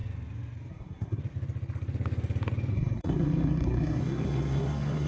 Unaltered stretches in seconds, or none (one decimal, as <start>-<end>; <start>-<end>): 0.0-0.7; 1.2-2.7